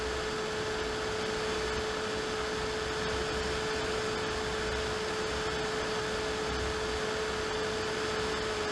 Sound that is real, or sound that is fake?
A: real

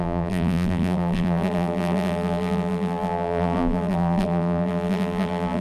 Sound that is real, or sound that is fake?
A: fake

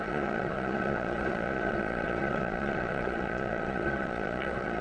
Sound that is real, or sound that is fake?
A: fake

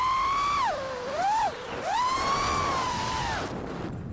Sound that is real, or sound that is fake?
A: real